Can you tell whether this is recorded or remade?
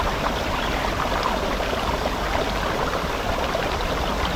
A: remade